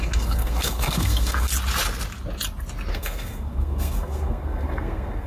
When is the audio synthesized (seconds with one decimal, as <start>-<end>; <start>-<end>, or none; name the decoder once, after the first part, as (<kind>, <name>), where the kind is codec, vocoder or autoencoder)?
0.0-1.5 (codec, SNAC); 2.9-5.3